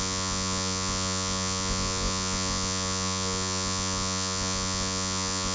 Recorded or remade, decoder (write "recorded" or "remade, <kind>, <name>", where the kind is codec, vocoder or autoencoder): remade, vocoder, Vocos